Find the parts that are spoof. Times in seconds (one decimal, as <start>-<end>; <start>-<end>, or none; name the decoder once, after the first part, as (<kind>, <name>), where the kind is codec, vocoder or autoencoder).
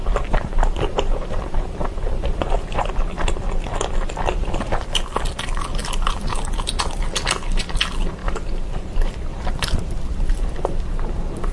0.0-2.9 (vocoder, BigVGAN v2); 5.8-6.7; 8.2-8.8